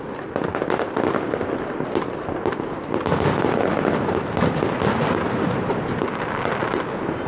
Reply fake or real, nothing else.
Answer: real